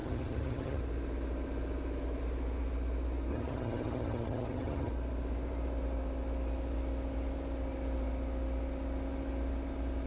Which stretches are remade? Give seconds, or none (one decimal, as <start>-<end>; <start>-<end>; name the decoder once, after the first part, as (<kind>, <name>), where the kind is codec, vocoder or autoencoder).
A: 0.0-0.8 (vocoder, HiFi-GAN); 3.3-4.9